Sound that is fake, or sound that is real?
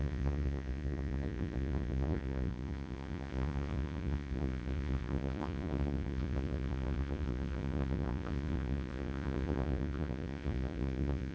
fake